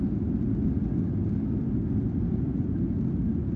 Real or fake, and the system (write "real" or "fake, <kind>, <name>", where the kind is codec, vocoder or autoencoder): real